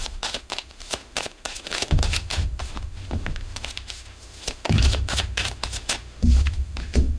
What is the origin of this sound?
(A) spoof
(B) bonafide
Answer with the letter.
A